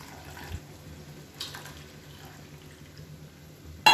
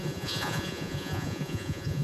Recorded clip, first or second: first